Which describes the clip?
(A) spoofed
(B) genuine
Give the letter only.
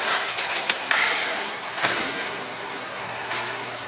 A